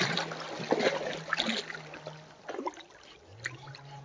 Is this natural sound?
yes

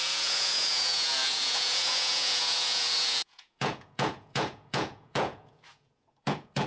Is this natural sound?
no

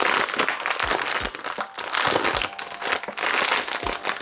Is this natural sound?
yes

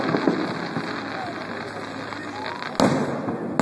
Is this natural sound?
yes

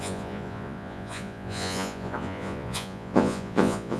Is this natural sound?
no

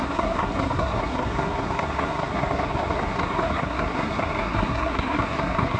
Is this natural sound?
no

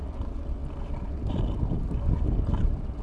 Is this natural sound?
yes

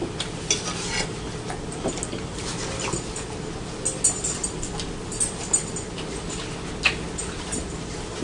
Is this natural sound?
yes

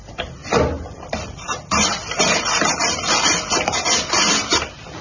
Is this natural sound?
no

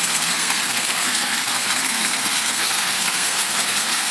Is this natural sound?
no